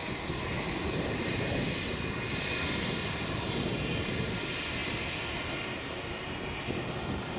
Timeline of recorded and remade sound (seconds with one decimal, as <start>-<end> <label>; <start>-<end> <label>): 0.0-3.8 remade; 3.8-7.4 recorded